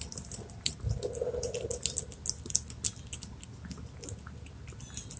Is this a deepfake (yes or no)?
no